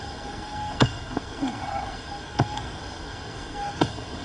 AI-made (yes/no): yes